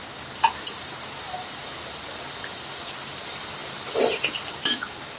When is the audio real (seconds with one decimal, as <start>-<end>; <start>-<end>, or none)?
none